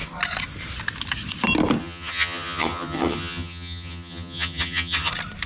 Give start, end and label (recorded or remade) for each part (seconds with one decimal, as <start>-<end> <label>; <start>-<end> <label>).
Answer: 0.0-1.8 recorded; 1.8-5.1 remade; 5.1-5.5 recorded